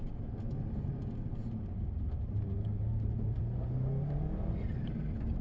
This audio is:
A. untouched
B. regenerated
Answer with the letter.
A